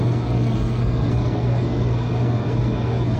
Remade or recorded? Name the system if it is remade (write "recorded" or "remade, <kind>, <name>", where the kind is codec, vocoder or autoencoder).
remade, codec, SNAC